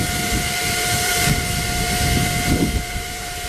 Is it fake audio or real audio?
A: real